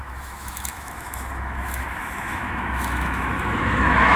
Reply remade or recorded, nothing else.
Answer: remade